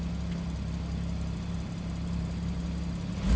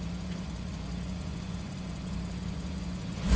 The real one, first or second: first